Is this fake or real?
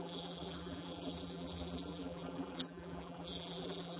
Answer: fake